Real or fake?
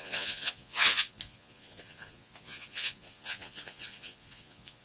fake